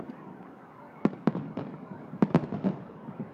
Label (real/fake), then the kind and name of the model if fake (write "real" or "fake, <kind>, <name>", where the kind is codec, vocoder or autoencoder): fake, codec, DAC